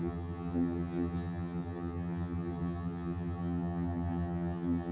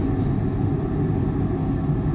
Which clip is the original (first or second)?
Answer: second